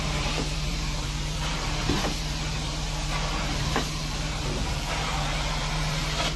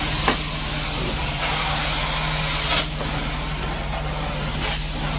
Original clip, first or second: second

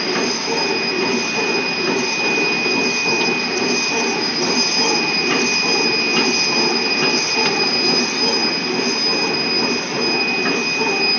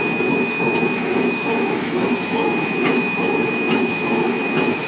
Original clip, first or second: first